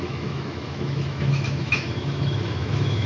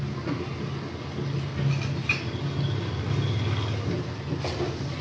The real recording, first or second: second